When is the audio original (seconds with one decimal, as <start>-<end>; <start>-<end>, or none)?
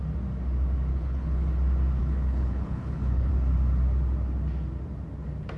0.0-0.9; 1.5-2.0; 3.3-5.6